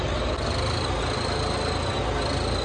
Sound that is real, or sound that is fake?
real